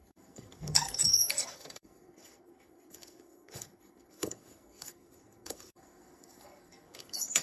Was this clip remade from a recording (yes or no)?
yes